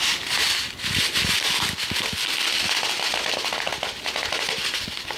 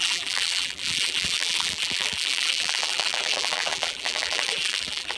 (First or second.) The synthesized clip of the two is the second